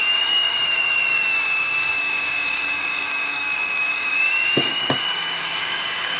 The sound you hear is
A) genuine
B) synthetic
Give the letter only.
B